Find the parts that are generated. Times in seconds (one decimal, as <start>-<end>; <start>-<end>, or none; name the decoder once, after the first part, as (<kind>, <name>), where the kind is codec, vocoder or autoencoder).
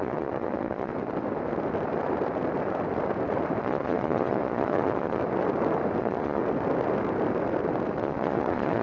0.0-0.9 (vocoder, Vocos); 3.6-5.2; 6.0-6.4; 8.0-8.8